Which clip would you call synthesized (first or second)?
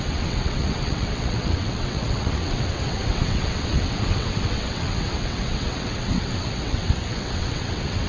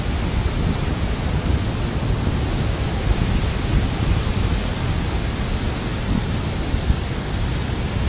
first